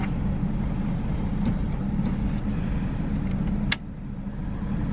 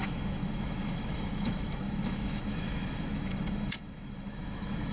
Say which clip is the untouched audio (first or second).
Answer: first